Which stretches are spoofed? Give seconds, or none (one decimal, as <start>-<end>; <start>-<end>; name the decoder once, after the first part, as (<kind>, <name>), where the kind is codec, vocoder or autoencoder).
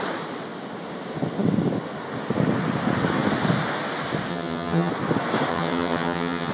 4.3-4.9 (vocoder, HiFi-GAN); 5.5-6.5